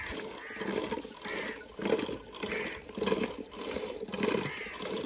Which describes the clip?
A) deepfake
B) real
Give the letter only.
B